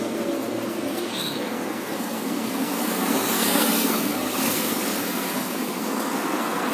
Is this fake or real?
fake